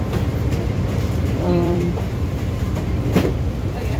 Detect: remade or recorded remade